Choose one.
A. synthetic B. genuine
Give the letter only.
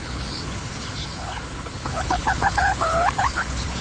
A